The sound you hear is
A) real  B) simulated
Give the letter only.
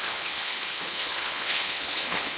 B